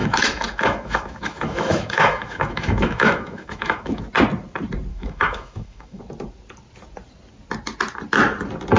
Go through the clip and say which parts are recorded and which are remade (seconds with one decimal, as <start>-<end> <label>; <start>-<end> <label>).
0.0-4.0 remade; 4.0-4.9 recorded; 4.9-6.0 remade; 6.0-8.8 recorded